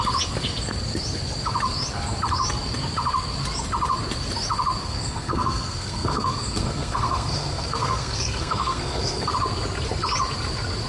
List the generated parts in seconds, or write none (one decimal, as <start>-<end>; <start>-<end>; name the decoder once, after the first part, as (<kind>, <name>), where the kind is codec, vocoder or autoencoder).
4.8-9.3 (codec, SNAC)